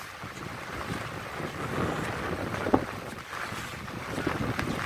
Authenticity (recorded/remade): recorded